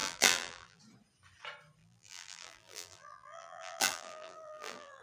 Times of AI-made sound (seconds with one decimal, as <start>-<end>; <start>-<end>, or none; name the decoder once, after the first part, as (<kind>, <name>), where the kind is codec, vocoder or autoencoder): 0.0-0.8 (vocoder, BigVGAN v2); 1.8-5.0